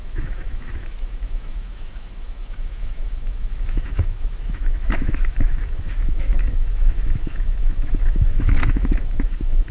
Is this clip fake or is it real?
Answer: fake